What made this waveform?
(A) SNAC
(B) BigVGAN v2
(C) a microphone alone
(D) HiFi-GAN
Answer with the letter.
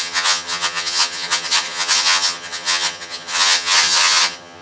D